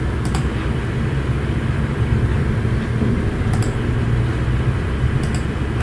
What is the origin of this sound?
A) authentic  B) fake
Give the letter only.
A